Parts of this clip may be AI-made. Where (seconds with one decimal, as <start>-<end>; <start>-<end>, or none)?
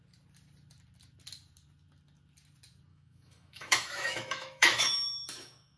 2.9-5.8